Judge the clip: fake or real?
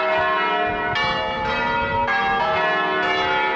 real